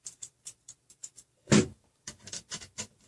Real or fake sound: fake